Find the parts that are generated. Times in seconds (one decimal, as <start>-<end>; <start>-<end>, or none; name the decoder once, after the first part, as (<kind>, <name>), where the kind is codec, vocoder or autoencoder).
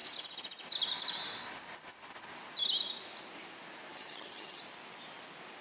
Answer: 3.9-4.6 (vocoder, HiFi-GAN)